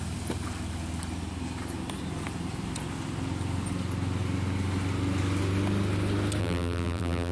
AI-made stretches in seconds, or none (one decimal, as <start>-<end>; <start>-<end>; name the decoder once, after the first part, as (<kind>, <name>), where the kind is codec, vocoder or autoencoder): 6.4-7.3 (vocoder, BigVGAN v2)